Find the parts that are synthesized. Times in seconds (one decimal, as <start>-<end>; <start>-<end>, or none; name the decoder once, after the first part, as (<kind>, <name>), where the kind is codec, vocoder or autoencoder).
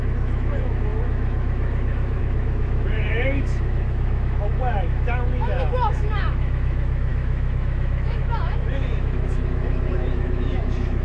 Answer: 0.0-11.0 (autoencoder, DAC-VAE)